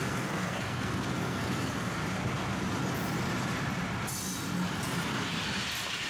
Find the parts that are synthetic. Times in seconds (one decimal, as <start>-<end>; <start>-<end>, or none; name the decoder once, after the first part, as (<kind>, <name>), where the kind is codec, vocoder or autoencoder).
0.0-2.0 (codec, SNAC)